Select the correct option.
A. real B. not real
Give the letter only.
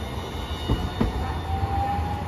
A